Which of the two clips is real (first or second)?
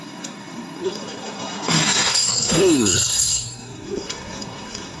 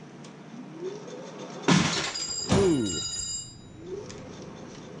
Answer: second